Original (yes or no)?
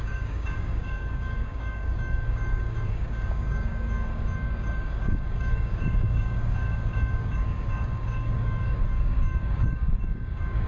no